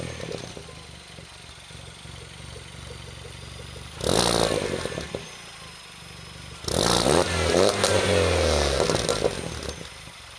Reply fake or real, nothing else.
real